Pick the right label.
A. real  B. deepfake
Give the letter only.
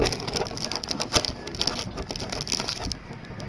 A